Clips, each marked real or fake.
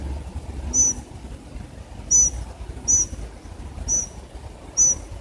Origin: real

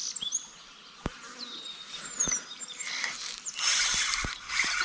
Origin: fake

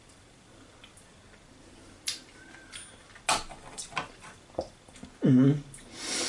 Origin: real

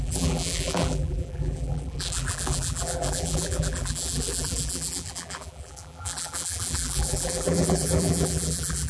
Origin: fake